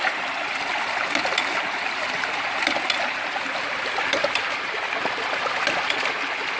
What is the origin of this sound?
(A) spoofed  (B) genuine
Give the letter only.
B